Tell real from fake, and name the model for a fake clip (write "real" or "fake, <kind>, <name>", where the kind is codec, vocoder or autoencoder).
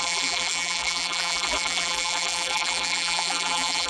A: fake, vocoder, BigVGAN v2